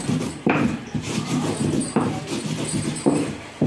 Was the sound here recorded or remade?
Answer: remade